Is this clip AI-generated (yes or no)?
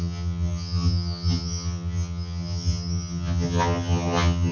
yes